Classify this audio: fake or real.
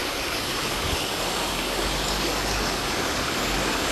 fake